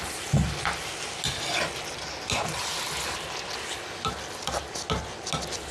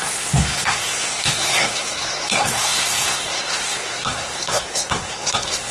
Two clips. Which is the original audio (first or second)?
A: first